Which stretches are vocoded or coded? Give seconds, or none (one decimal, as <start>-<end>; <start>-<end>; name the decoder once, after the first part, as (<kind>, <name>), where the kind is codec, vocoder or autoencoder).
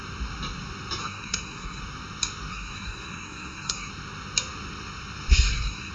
1.0-1.8 (codec, SNAC); 2.5-3.9; 5.3-5.9